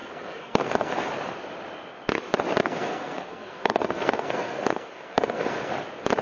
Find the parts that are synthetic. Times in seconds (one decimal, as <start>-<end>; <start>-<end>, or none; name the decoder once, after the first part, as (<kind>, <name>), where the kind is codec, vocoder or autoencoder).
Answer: 0.0-1.1 (codec, SNAC); 2.6-5.7

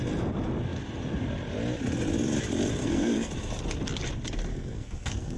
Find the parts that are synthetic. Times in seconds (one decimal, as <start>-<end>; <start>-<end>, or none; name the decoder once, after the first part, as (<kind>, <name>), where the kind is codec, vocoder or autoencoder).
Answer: 2.8-3.3 (codec, SNAC); 4.5-5.4